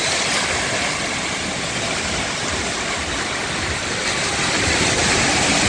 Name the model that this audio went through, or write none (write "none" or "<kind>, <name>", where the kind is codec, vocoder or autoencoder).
none